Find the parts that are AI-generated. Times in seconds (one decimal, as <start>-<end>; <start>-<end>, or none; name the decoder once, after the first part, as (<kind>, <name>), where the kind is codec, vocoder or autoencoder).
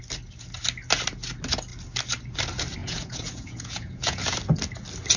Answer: 2.8-4.2 (vocoder, Vocos)